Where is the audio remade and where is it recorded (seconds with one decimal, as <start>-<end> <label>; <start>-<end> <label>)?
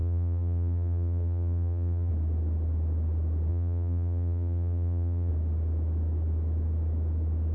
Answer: 0.0-2.1 remade; 2.1-3.5 recorded; 3.5-5.3 remade; 5.3-7.5 recorded